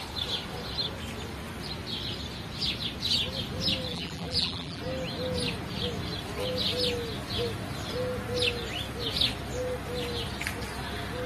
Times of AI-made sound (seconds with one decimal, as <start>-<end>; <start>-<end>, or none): 3.9-4.8